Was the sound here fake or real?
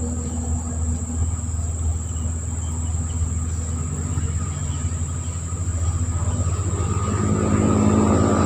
real